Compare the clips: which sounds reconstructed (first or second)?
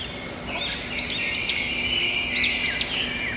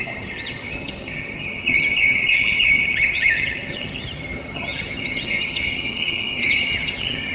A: second